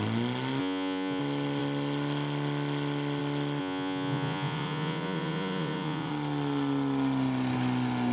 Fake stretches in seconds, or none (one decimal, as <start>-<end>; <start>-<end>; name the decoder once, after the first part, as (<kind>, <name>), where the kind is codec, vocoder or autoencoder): 0.6-1.2 (vocoder, Vocos); 3.6-6.1